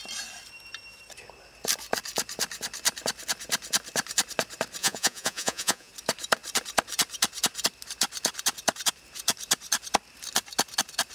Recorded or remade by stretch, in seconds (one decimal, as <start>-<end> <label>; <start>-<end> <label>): 0.0-4.8 recorded; 4.8-5.9 remade; 5.9-11.1 recorded